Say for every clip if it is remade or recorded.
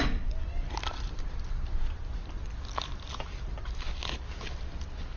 recorded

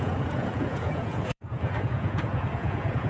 remade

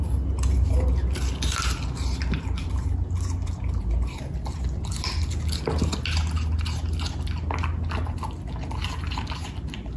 recorded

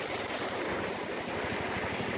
recorded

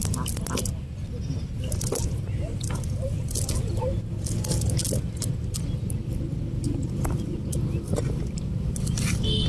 recorded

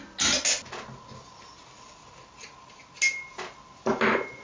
recorded